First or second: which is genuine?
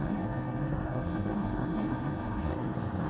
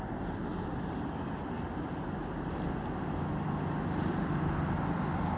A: second